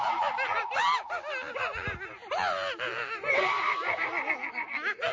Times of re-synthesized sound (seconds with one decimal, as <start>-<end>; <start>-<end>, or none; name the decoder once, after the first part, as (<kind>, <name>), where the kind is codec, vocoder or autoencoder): none